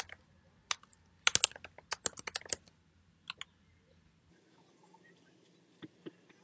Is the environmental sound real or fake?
real